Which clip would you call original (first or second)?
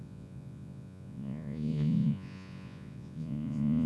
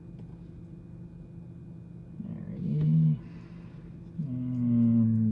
second